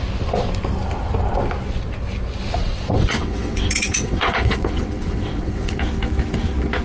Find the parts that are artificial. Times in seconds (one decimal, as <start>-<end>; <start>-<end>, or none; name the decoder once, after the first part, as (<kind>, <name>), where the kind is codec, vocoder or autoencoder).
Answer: 2.6-5.7 (vocoder, WaveNeXt)